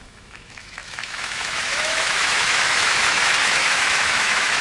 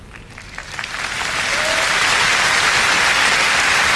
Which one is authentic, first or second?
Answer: second